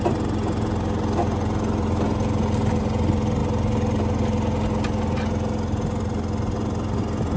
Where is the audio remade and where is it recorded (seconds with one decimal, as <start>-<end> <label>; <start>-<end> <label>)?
0.0-7.4 recorded